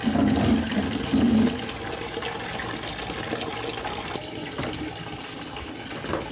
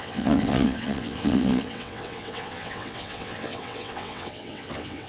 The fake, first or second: second